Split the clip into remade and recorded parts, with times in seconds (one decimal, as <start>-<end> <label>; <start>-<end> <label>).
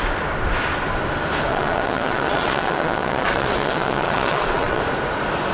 0.0-1.5 recorded; 1.5-4.8 remade; 4.8-5.5 recorded